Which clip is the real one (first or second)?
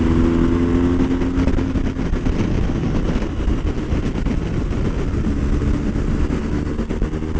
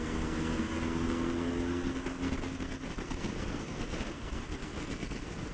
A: first